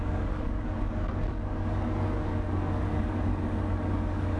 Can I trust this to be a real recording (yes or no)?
no